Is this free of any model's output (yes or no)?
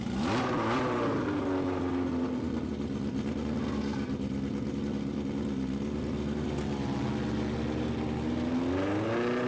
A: yes